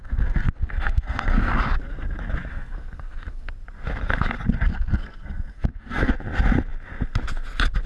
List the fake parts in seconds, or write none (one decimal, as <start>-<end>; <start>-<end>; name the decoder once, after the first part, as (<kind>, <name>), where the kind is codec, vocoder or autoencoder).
0.0-1.5 (codec, SNAC); 2.5-3.5; 4.7-6.1

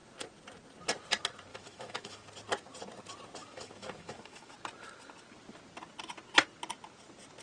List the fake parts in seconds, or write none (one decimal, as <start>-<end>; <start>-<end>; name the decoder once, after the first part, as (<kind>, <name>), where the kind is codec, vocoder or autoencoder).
1.5-2.3 (autoencoder, DAC-VAE); 3.4-4.5

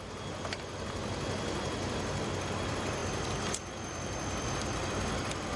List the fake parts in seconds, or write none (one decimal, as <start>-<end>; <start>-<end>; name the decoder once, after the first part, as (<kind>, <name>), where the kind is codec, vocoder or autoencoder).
none

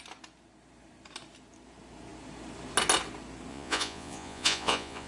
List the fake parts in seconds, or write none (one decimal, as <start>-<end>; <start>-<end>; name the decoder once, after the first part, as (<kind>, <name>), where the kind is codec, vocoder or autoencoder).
3.5-5.1 (vocoder, Vocos)

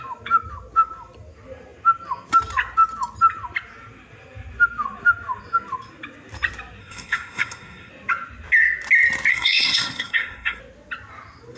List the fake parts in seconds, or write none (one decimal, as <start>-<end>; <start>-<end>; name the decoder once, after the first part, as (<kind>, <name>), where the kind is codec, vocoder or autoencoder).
6.8-7.9 (codec, SNAC); 9.3-10.6

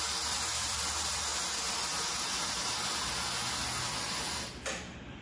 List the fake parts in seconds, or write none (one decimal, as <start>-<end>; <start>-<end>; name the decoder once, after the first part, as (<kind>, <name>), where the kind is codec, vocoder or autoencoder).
0.0-1.3 (vocoder, BigVGAN v2); 3.8-5.2

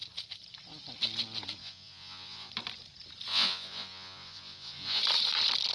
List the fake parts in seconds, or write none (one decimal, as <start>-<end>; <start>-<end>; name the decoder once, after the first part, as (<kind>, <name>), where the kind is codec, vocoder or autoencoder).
1.6-2.5 (vocoder, Vocos); 3.3-5.0